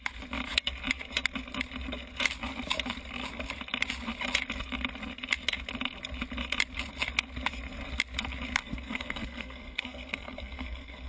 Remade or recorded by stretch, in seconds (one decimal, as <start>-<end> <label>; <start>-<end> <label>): 0.0-8.6 recorded; 8.6-11.1 remade